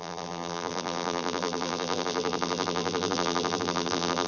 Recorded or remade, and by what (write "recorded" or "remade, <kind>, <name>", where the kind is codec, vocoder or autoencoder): remade, vocoder, BigVGAN v2